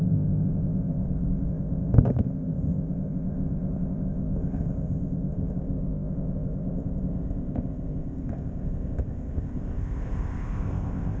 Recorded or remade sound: remade